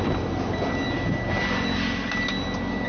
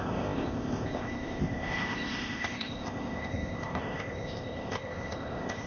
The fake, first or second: second